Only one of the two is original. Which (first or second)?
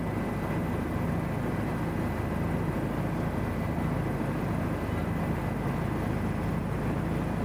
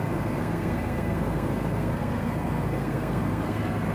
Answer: first